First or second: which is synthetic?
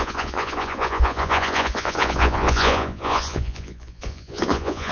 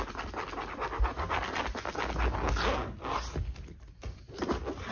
first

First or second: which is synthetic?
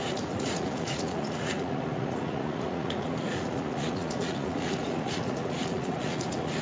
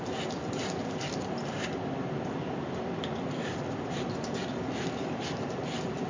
first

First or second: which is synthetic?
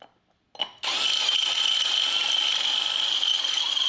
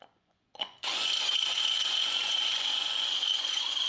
second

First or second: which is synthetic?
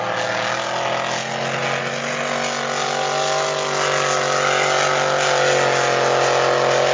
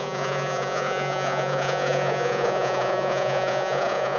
second